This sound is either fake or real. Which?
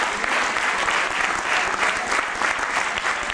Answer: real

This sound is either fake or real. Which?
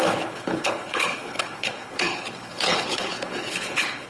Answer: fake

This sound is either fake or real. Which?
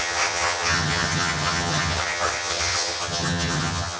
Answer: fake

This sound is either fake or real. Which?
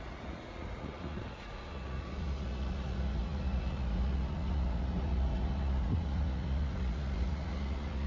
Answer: fake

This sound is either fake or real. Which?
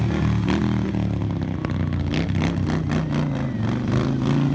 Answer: real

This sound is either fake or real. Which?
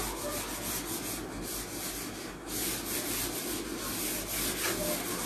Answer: real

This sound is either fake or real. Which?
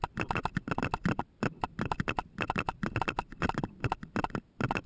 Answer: real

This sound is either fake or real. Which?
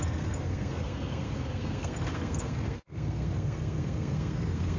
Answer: fake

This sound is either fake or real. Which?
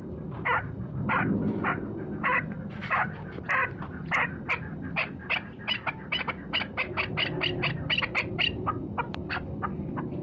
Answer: fake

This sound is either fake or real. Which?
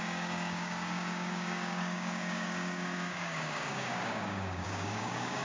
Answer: fake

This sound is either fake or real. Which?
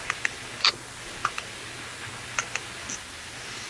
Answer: real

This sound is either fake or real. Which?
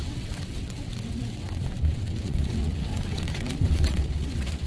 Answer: fake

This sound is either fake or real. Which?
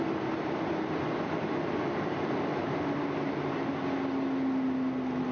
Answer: real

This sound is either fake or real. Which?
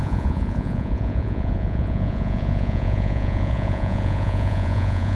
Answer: fake